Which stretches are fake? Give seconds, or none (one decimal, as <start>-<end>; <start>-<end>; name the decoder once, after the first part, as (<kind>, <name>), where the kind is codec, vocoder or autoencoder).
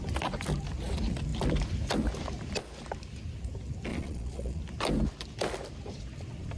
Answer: 3.9-4.6 (vocoder, Vocos)